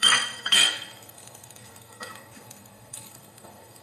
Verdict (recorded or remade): remade